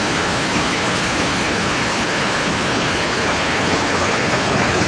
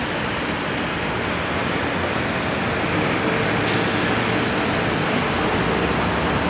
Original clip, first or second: second